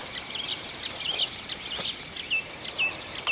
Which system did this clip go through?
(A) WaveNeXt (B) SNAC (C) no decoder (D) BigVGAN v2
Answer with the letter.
C